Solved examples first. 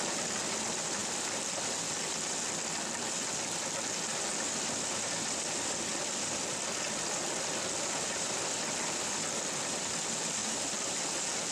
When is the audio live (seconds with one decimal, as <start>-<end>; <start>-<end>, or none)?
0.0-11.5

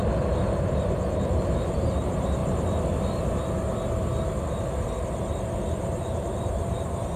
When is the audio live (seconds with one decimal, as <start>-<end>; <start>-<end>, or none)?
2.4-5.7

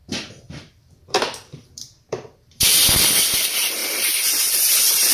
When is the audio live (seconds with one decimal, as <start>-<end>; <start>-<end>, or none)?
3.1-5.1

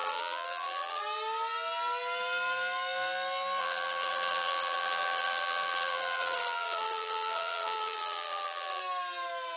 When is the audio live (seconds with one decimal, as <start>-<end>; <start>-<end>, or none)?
1.0-3.6; 8.8-9.6

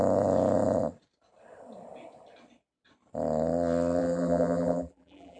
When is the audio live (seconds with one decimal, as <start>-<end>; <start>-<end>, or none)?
0.0-4.0